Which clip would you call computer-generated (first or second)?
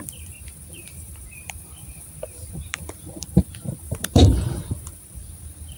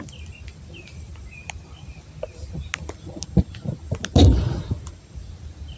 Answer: first